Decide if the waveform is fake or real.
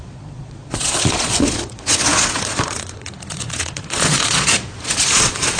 fake